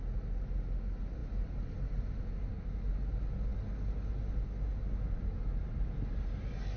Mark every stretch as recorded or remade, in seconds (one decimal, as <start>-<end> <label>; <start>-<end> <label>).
0.0-6.8 recorded